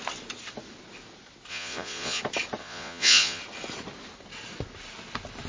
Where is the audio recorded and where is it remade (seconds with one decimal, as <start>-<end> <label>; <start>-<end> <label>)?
0.0-1.5 recorded; 1.5-2.2 remade; 2.2-2.6 recorded; 2.6-3.4 remade; 3.4-5.5 recorded